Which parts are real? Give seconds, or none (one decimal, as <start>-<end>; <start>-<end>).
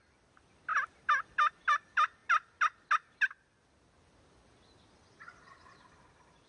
2.2-6.1